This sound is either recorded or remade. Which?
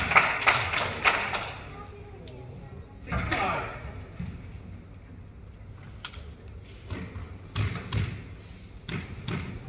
recorded